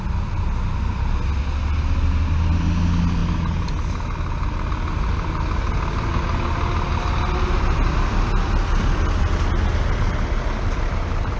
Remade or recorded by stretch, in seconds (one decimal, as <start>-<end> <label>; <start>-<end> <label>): 0.0-11.4 recorded